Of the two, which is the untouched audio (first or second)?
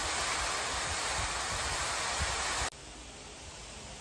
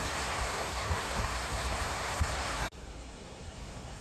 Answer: first